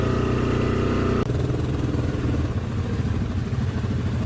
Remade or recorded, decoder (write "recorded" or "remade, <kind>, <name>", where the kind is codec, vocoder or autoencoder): recorded